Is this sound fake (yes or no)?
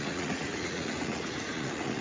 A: yes